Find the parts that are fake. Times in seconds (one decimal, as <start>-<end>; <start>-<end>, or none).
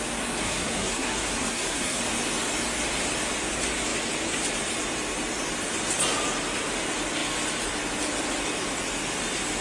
0.4-2.0